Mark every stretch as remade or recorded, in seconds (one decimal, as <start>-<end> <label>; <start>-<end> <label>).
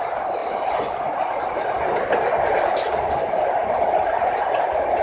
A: 0.0-5.0 recorded